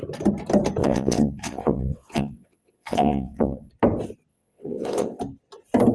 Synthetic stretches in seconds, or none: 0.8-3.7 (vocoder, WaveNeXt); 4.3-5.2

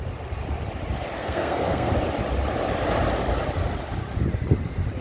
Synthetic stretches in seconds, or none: 1.2-1.9 (codec, SNAC)

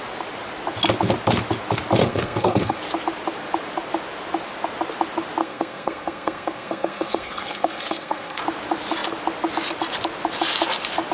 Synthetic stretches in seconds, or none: 2.0-2.8 (codec, SNAC); 5.4-8.4

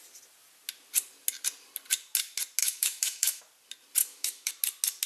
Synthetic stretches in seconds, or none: 2.6-3.4 (autoencoder, DAC-VAE); 4.0-4.5